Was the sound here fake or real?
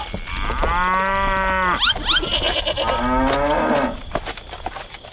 real